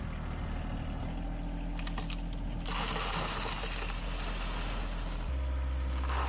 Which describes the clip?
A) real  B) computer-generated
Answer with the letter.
A